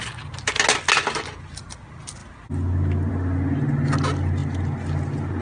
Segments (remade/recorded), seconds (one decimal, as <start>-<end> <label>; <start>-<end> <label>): 0.0-5.4 recorded